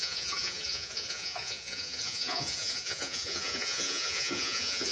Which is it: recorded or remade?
remade